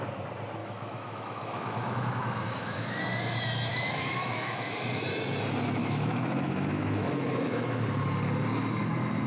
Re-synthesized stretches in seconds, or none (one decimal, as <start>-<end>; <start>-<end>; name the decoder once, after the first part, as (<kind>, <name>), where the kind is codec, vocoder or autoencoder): 0.6-3.0 (autoencoder, DAC-VAE); 3.7-5.0; 5.8-7.7